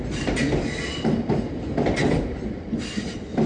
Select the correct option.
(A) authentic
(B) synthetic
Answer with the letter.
A